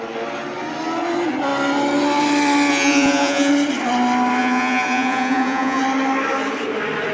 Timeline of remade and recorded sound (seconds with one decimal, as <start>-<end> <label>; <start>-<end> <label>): 0.0-2.7 recorded; 2.7-3.5 remade; 3.5-4.4 recorded; 4.4-5.8 remade; 5.8-7.1 recorded